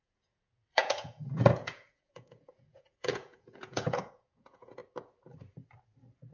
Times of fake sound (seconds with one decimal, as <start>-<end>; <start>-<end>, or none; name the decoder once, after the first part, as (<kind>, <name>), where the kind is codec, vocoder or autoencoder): 0.0-4.8 (vocoder, Vocos)